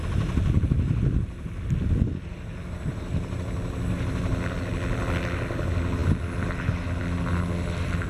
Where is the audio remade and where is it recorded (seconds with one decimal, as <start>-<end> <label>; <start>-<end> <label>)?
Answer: 0.0-8.1 recorded